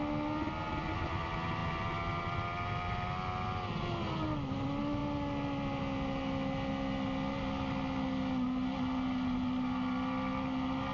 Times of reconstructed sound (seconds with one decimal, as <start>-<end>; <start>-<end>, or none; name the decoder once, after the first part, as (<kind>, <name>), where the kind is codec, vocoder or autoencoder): none